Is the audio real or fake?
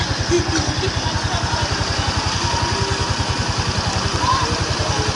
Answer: real